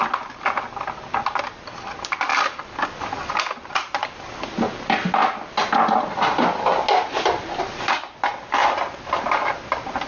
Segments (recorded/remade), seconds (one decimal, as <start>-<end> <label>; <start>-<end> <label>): 0.0-8.6 recorded; 8.6-10.1 remade